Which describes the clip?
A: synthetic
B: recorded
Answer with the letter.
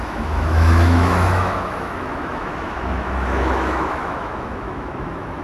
A